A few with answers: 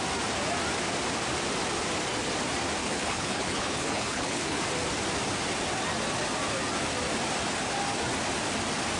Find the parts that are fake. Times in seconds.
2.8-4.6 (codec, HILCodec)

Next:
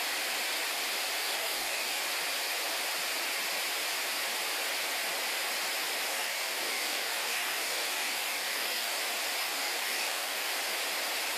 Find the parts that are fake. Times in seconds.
1.2-2.0 (codec, DAC); 6.1-9.0; 9.4-10.5

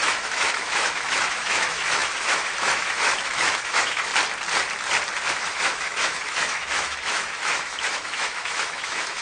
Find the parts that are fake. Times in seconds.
0.0-4.1 (autoencoder, DAC-VAE); 5.3-9.2

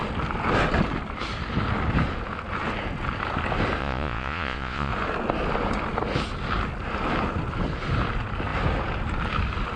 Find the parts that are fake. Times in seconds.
3.8-4.9 (vocoder, Vocos)

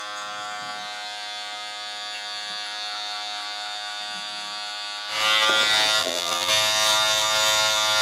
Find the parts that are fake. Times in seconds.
6.0-6.5 (vocoder, BigVGAN v2)

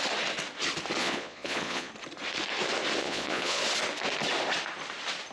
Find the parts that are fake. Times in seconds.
1.0-1.9 (vocoder, Vocos); 3.0-3.6

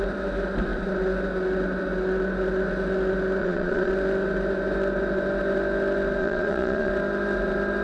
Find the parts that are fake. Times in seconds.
3.4-3.9 (vocoder, Vocos); 6.2-6.9